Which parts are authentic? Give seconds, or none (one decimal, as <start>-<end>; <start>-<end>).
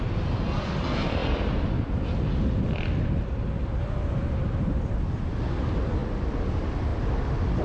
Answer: 0.0-7.6